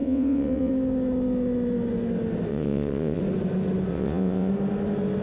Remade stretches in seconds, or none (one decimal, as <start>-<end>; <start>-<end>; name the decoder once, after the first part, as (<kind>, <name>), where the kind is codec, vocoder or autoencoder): 0.0-0.7 (vocoder, WaveNeXt); 2.5-3.2; 3.9-4.5